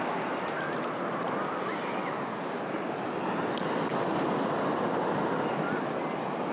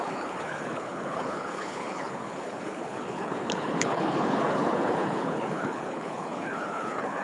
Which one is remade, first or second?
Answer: second